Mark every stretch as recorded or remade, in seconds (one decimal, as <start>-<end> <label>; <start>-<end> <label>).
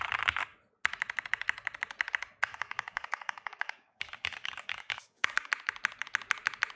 0.0-2.5 recorded; 2.5-5.5 remade; 5.5-6.8 recorded